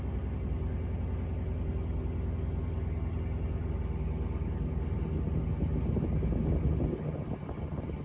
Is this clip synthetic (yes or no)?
no